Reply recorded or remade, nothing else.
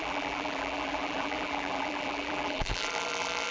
remade